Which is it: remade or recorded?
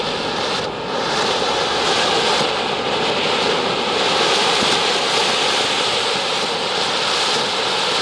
recorded